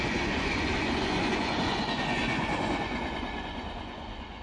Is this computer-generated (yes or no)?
yes